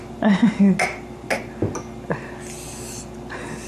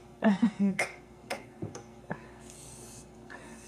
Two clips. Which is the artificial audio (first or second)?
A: second